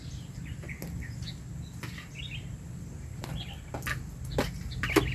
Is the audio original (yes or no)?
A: yes